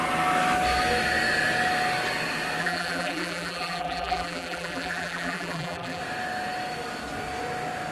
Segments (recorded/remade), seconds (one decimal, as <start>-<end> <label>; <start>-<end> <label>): 0.0-2.6 recorded; 2.6-6.0 remade; 6.0-7.9 recorded